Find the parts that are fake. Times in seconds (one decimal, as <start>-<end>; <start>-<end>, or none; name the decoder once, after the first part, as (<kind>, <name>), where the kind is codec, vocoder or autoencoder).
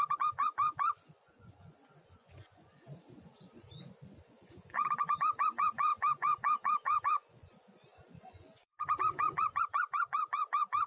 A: 0.0-10.9 (vocoder, Vocos)